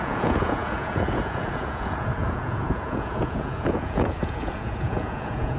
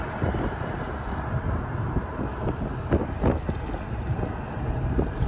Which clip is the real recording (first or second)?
second